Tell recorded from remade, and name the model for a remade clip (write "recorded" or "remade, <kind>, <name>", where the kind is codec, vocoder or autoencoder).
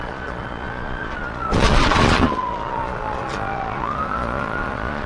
remade, vocoder, Vocos